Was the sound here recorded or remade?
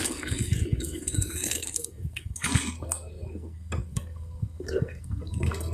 remade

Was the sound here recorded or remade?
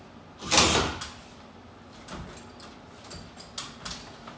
recorded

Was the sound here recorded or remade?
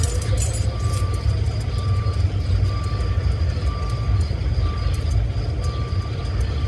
recorded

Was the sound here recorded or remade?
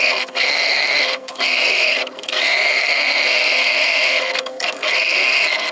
remade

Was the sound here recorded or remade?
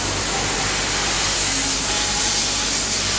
recorded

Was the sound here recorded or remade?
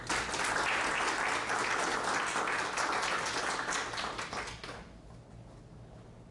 recorded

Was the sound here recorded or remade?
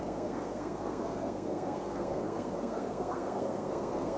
remade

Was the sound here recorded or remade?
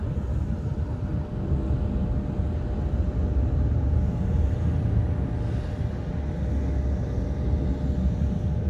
recorded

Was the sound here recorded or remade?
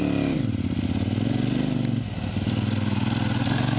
recorded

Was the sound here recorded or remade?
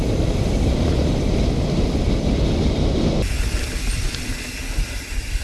recorded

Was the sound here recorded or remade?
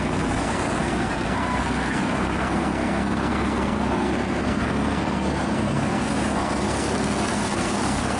remade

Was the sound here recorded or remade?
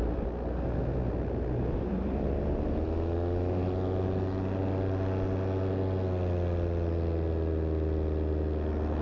recorded